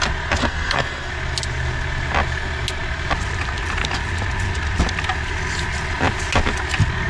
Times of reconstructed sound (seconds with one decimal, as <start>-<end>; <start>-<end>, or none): 0.4-1.1